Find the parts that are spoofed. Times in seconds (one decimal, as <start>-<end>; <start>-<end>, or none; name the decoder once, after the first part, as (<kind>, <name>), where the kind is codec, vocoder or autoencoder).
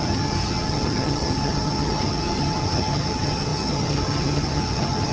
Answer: 0.0-5.1 (vocoder, HiFi-GAN)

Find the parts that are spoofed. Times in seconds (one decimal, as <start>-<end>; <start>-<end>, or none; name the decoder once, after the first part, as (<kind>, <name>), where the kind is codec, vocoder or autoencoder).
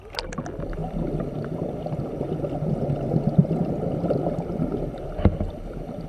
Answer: 3.4-4.9 (vocoder, BigVGAN v2)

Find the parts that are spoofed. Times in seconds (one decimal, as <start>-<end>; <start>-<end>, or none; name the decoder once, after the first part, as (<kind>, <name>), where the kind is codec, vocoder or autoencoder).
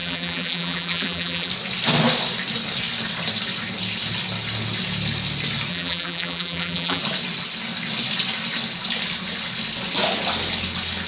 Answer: 0.0-1.5 (vocoder, BigVGAN v2); 5.7-7.0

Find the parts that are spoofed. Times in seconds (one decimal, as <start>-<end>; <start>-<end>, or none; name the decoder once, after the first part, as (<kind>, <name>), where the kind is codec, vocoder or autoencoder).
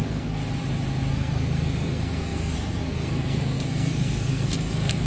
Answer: 0.0-0.4 (codec, SNAC); 1.1-5.1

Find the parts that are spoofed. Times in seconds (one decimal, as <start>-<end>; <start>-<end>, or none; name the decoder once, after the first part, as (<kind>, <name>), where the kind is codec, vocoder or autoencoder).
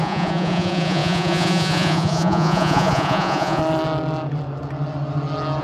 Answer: 0.0-3.6 (vocoder, Vocos)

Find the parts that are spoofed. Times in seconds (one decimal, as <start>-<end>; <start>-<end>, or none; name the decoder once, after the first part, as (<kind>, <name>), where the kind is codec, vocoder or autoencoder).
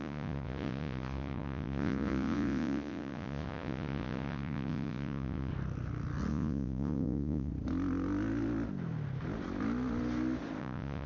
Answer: 0.0-5.5 (vocoder, Vocos); 6.3-7.5; 10.6-11.1